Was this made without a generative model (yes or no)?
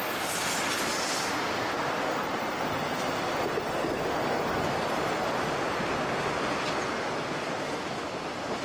yes